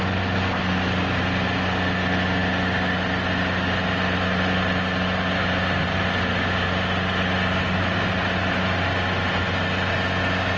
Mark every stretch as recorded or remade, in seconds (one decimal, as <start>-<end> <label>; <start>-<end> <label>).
0.0-10.6 recorded